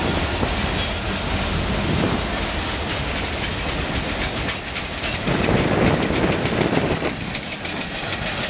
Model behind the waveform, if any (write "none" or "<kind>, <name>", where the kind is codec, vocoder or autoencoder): none